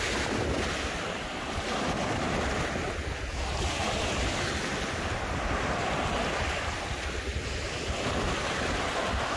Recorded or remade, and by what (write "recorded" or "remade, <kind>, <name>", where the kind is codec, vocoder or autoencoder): recorded